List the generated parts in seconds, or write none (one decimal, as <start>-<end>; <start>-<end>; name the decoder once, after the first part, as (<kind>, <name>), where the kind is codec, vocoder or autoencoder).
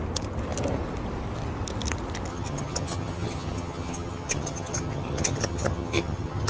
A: 2.3-6.5 (vocoder, HiFi-GAN)